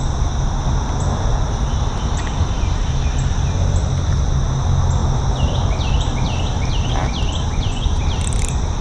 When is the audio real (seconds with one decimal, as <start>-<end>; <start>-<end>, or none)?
0.0-7.5; 8.0-8.8